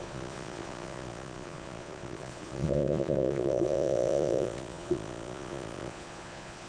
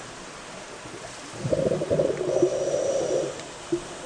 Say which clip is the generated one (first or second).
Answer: first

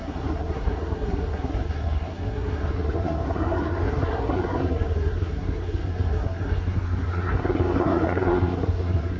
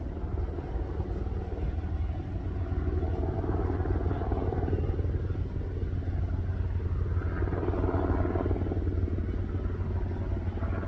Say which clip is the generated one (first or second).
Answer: first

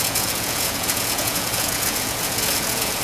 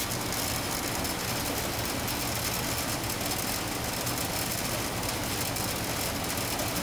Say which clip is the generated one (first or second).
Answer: first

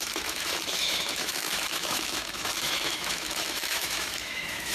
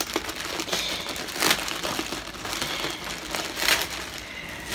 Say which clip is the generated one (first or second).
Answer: first